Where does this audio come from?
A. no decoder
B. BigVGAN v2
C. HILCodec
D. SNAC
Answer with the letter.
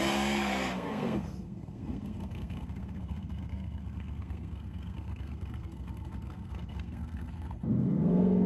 D